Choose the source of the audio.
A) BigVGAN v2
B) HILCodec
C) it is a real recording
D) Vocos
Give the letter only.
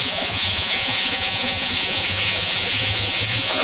D